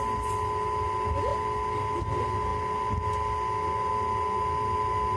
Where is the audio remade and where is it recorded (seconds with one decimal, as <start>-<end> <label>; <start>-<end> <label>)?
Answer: 0.0-5.2 recorded